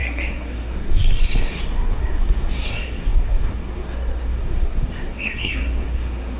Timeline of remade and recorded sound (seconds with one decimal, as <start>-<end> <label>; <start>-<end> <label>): 0.0-6.4 remade